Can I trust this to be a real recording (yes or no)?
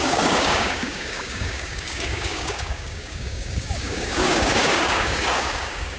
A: no